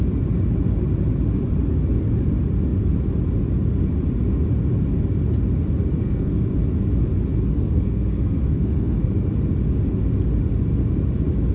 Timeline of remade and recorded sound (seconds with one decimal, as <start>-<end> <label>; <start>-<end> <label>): 0.0-6.0 recorded; 6.0-6.5 remade; 6.5-7.5 recorded; 7.5-9.1 remade; 9.1-11.5 recorded